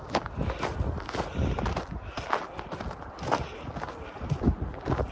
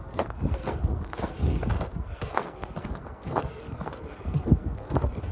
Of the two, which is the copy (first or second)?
second